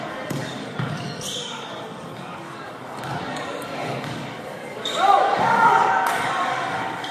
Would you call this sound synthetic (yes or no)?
yes